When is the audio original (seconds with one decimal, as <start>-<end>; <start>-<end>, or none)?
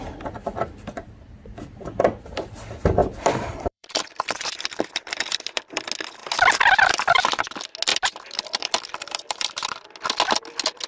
0.0-3.0; 5.8-7.9; 9.7-10.9